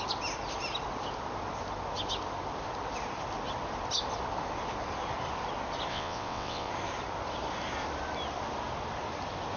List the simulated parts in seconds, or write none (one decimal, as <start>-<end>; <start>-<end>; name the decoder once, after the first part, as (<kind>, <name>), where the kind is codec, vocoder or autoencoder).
5.9-6.7 (vocoder, WaveNeXt)

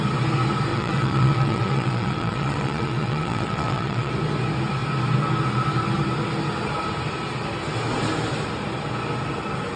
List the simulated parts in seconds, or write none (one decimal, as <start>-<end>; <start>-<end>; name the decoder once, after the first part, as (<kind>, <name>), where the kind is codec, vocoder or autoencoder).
0.7-4.1 (vocoder, WaveNeXt)